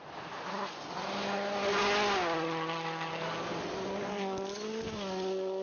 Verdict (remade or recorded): recorded